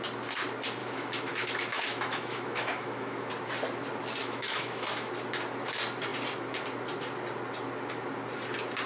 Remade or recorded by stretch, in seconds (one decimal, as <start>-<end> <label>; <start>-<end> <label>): 0.0-0.8 recorded; 0.8-3.3 remade; 3.3-4.2 recorded; 4.2-5.1 remade; 5.1-8.9 recorded